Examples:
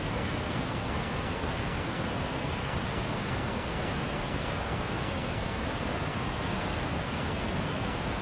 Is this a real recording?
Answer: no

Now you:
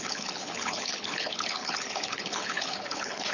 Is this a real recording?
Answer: no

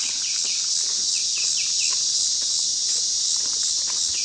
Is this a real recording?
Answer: yes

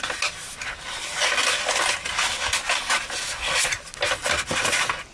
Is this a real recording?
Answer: yes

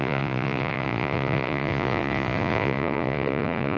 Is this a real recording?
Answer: no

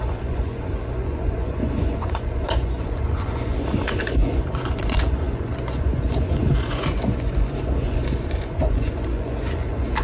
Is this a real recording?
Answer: no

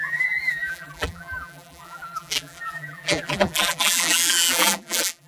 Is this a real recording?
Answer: no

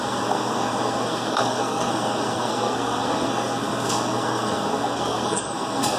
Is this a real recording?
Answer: no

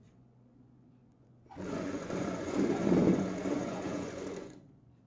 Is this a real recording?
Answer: no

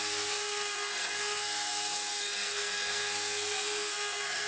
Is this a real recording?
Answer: no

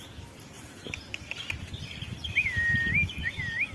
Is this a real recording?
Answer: yes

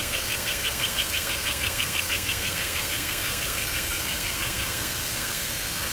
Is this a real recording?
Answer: no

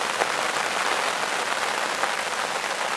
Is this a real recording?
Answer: yes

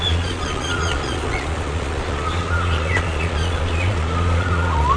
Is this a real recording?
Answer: no